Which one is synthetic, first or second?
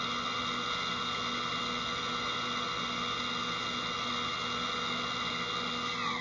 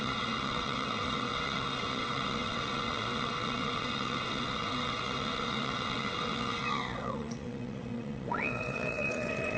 second